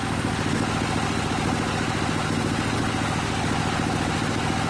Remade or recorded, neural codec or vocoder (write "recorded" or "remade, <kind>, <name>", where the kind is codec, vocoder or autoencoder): recorded